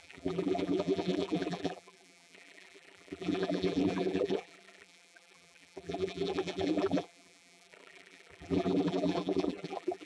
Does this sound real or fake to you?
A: fake